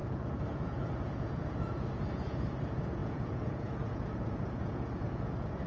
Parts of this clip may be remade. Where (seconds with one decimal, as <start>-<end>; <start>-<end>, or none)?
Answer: 0.0-5.7